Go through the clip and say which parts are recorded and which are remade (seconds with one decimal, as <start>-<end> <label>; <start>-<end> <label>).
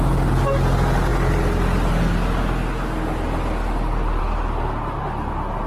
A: 0.0-5.7 recorded